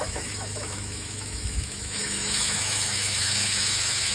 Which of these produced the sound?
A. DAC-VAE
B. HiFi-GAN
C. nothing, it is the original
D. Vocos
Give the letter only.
A